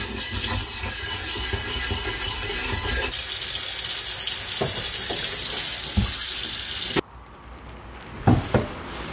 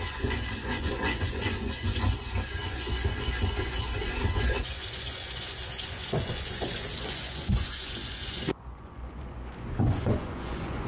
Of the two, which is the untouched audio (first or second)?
first